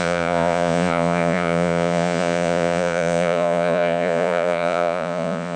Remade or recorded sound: remade